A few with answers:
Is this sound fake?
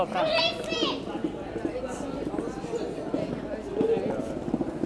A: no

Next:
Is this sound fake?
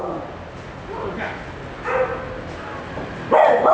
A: no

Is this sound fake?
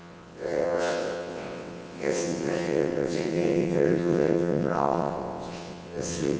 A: yes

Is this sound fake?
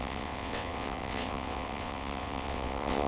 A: yes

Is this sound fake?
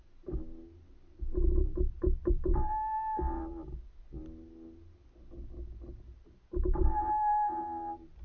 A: no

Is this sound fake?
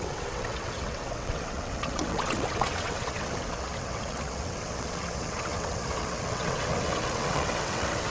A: yes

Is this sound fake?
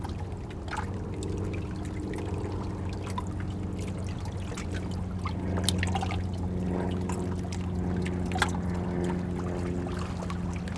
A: no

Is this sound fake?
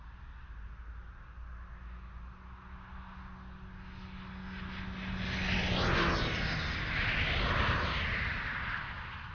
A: no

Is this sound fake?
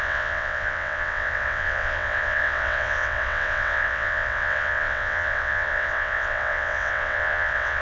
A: yes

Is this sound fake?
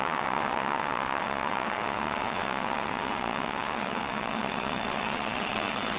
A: yes